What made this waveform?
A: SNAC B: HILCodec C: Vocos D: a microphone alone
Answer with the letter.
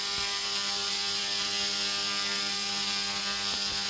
D